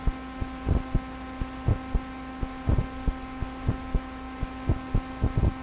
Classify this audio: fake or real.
real